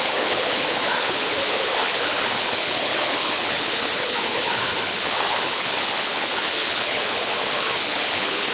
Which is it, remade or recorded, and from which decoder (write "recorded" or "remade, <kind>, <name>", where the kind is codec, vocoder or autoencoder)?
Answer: remade, codec, HILCodec